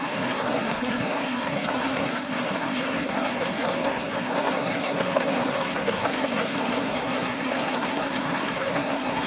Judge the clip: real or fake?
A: fake